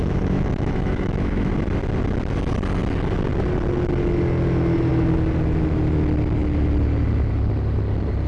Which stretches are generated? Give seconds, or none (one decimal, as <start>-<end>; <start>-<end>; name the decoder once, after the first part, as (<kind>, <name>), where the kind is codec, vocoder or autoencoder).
0.0-1.5 (autoencoder, DAC-VAE)